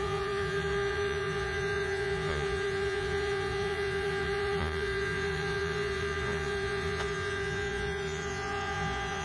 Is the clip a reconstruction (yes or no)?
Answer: yes